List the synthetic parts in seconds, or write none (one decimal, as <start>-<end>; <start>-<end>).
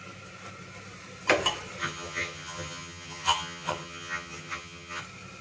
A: 1.8-5.0